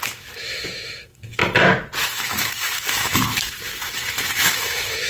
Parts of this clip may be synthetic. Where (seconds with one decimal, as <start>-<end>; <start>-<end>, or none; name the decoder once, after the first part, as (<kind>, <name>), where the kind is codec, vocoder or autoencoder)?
0.0-1.4 (autoencoder, DAC-VAE); 2.1-5.1